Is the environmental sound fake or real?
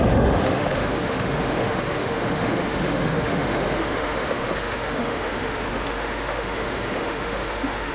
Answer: fake